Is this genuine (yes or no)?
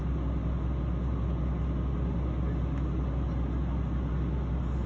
yes